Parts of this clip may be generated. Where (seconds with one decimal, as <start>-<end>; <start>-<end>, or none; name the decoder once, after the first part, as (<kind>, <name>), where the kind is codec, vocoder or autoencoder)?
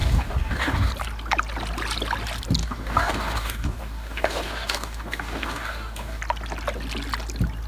0.0-0.9 (codec, DAC); 2.6-6.2